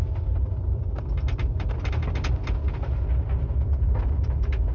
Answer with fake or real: real